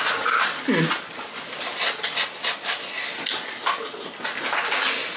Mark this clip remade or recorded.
recorded